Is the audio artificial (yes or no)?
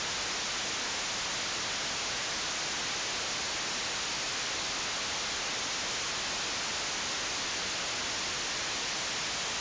no